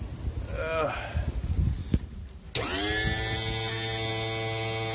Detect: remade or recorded recorded